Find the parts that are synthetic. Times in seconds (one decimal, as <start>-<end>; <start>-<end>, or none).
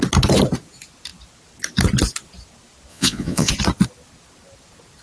2.9-3.5